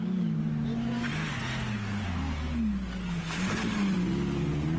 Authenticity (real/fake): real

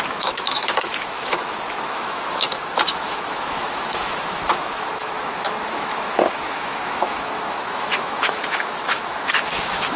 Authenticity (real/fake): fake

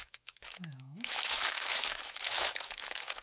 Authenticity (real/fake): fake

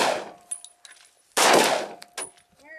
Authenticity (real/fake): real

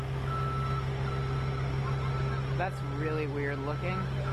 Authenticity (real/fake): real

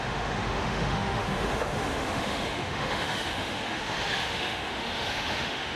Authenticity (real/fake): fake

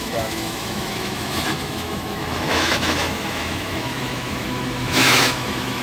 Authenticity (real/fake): fake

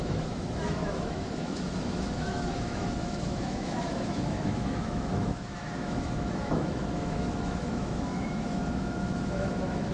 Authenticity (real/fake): fake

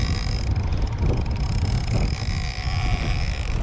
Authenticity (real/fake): real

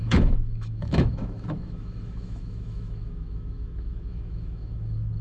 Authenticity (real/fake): fake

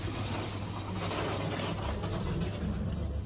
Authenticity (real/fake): real